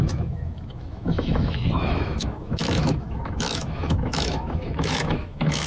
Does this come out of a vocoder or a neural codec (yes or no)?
yes